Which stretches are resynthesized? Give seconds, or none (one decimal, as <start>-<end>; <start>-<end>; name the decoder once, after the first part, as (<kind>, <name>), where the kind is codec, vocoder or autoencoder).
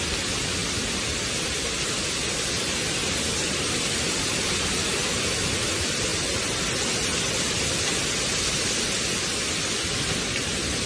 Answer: none